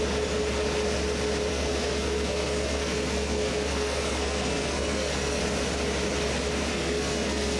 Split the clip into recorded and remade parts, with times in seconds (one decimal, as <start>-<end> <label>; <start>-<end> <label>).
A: 0.0-1.5 recorded; 1.5-5.4 remade; 5.4-6.7 recorded; 6.7-7.6 remade